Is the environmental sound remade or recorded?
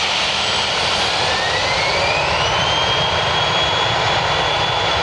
recorded